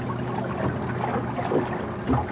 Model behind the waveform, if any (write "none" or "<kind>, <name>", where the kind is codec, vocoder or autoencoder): none